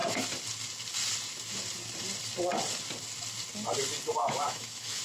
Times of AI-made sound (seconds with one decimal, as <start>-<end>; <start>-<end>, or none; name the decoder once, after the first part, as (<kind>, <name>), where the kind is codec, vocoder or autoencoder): 4.2-5.0 (autoencoder, DAC-VAE)